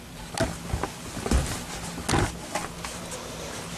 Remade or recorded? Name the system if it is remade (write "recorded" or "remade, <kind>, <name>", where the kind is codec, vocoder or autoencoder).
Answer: recorded